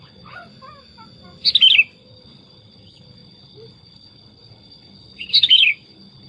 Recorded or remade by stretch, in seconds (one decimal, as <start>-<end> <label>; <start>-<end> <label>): 0.0-0.5 remade; 0.5-2.0 recorded; 2.0-6.3 remade